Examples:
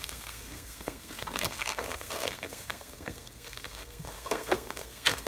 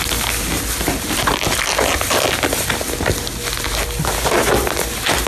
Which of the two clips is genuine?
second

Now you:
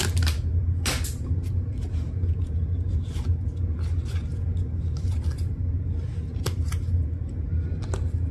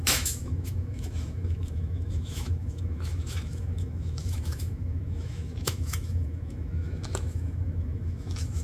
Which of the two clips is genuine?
first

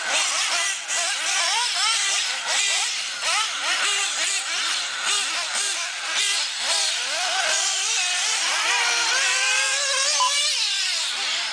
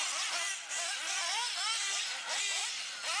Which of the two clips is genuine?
second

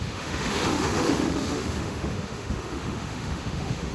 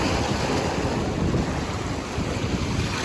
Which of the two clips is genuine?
second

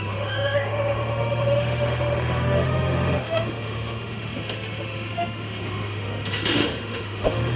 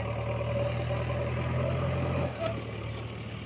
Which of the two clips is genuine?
second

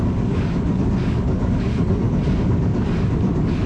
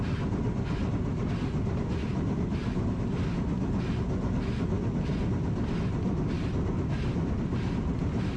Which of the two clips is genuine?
second